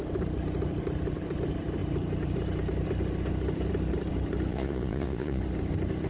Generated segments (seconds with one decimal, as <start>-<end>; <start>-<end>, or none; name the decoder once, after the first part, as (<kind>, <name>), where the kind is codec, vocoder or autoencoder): 4.5-5.4 (vocoder, Vocos)